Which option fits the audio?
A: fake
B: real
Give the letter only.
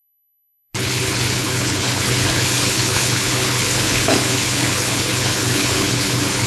A